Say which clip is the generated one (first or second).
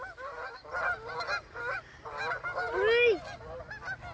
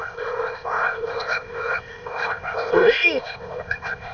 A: second